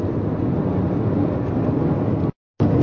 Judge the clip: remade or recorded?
recorded